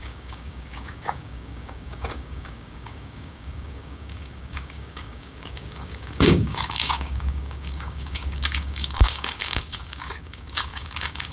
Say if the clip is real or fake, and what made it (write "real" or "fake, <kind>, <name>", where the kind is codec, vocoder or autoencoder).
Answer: fake, codec, DAC